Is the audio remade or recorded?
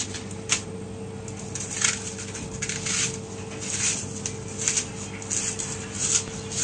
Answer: recorded